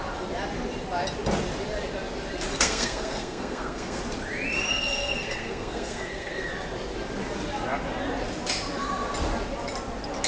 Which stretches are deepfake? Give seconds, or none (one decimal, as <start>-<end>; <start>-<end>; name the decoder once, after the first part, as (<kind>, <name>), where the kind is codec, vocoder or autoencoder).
2.5-4.0 (codec, SNAC); 4.7-6.5